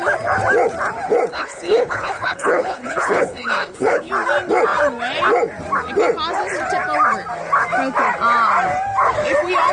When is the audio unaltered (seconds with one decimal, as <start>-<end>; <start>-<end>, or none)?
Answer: 0.0-1.3; 4.1-9.7